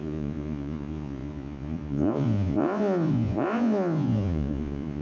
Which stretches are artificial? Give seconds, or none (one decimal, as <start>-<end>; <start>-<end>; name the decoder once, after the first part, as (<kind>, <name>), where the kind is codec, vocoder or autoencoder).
0.0-5.0 (vocoder, Vocos)